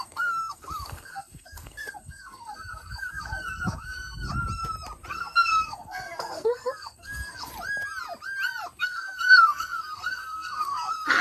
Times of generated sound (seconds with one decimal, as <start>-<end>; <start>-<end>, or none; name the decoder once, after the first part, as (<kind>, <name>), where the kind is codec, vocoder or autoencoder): 0.0-4.3 (codec, SNAC); 5.1-7.5; 8.8-11.2